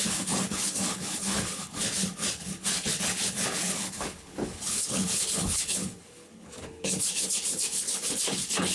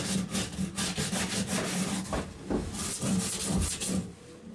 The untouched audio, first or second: second